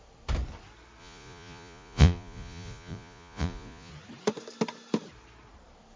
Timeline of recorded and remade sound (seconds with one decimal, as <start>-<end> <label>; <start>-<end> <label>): 0.0-1.0 recorded; 1.0-3.9 remade; 3.9-6.0 recorded